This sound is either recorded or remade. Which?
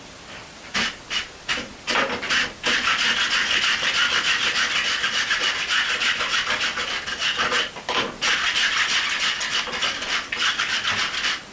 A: recorded